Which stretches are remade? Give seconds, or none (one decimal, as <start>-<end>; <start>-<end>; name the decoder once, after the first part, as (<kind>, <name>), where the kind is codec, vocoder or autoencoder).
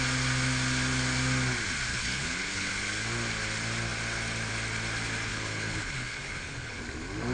1.9-2.7 (codec, HILCodec); 5.3-6.8